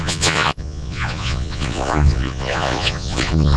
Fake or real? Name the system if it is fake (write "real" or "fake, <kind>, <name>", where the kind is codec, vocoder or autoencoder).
fake, vocoder, Vocos